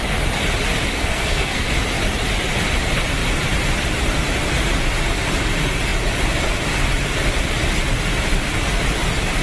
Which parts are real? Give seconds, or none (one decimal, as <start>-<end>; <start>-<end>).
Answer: 0.0-1.0; 1.7-9.4